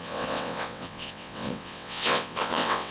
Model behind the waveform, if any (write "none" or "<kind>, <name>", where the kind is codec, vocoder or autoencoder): vocoder, WaveNeXt